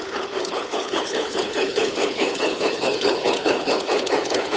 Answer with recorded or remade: remade